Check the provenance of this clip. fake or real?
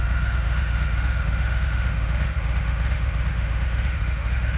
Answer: fake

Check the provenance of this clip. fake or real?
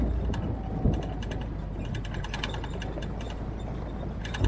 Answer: real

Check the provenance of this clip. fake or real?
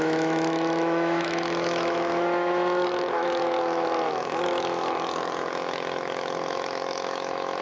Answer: fake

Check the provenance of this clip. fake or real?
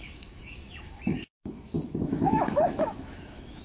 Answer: fake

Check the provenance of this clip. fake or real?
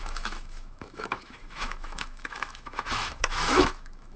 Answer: fake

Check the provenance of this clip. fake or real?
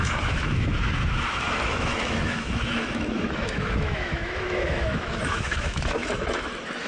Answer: fake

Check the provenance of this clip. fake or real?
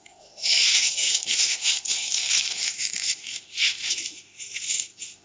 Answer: fake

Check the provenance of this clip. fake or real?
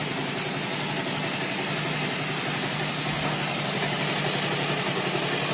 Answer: real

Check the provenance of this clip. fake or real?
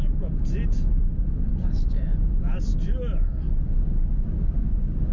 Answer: real